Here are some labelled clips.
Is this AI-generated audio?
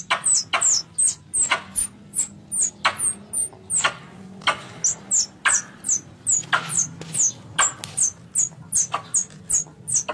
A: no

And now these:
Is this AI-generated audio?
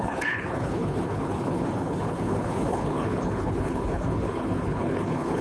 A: yes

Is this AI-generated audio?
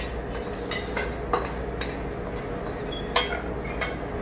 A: no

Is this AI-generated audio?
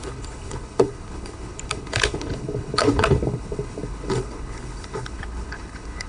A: yes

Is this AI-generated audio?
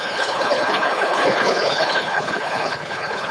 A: yes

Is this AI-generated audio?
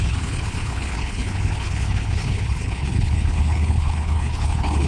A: yes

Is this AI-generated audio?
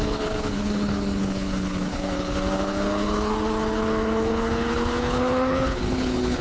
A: yes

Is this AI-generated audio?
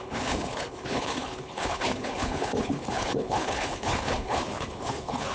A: yes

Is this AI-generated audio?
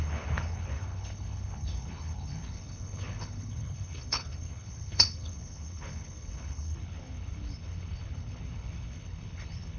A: yes